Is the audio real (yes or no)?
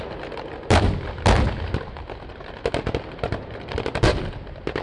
yes